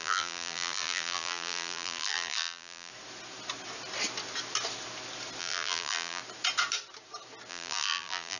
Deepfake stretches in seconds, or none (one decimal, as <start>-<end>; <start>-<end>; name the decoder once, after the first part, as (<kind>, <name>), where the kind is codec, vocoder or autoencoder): 0.0-2.9 (vocoder, BigVGAN v2); 5.4-6.2; 7.5-8.4